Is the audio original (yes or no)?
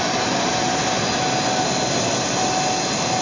yes